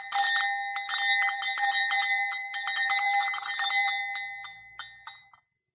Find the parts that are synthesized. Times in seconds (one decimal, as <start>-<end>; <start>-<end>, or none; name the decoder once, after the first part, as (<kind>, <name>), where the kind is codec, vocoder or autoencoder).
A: 1.2-4.0 (vocoder, BigVGAN v2)